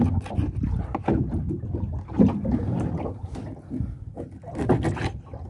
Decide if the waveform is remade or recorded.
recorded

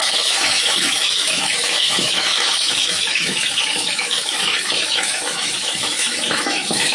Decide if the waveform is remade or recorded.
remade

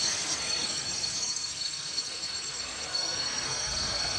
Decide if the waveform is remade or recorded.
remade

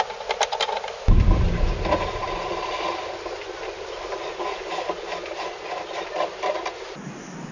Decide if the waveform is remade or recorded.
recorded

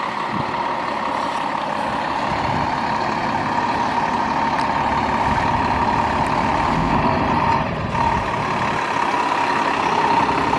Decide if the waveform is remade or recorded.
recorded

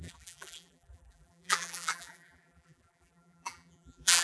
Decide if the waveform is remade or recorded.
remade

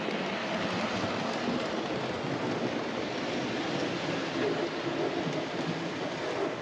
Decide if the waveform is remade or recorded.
recorded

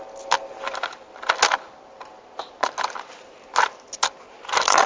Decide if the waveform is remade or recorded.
recorded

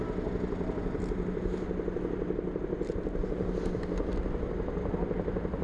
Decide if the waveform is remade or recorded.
recorded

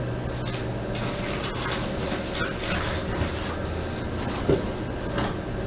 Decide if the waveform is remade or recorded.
recorded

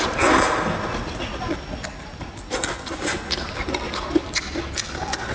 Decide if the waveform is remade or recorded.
recorded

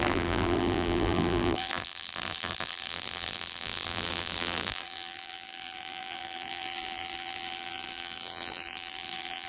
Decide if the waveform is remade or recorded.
remade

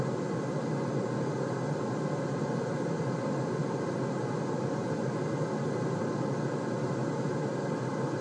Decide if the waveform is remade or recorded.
recorded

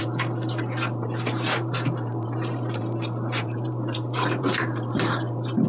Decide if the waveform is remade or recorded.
remade